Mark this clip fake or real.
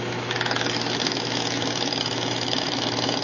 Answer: fake